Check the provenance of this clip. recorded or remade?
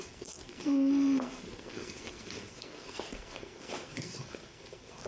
remade